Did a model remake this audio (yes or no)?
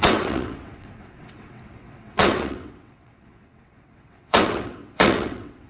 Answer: yes